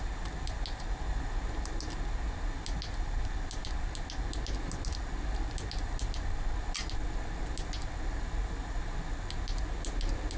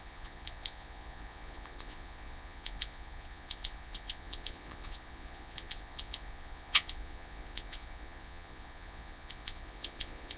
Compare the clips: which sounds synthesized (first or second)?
second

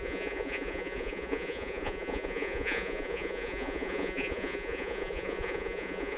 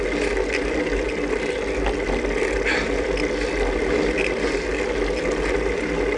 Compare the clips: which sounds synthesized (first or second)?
first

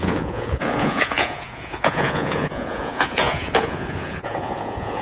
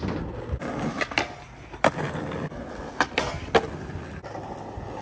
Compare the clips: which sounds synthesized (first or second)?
first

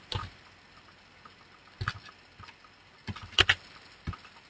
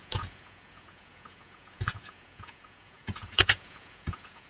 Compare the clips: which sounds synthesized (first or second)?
second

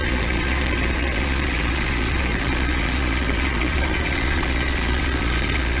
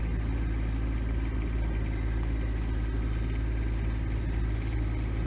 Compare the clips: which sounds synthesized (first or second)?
first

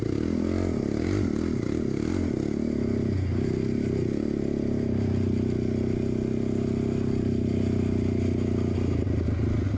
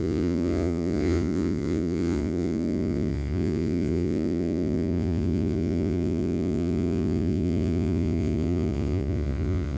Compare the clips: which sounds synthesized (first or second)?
second